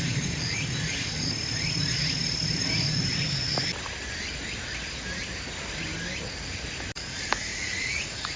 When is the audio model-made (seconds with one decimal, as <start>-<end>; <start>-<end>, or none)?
7.5-8.4